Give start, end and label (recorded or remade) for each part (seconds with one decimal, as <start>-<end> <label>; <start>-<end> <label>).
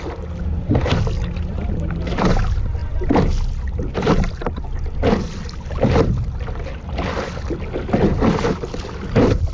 0.0-9.5 recorded